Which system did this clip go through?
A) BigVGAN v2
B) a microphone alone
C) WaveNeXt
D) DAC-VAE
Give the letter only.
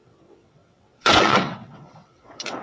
C